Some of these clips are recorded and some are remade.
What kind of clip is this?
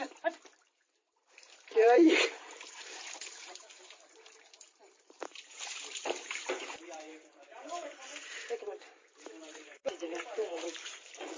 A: remade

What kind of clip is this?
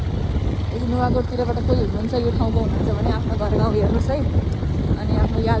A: recorded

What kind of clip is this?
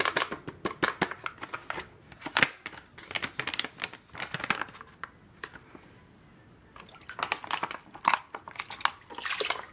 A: recorded